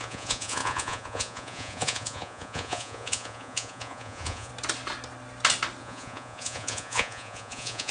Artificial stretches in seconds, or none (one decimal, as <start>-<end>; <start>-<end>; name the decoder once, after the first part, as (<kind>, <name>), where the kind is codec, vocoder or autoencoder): 0.0-4.5 (vocoder, Vocos); 5.8-7.9